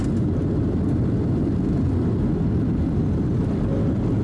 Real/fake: real